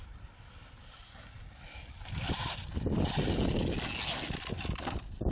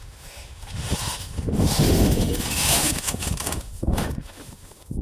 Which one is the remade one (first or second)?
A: second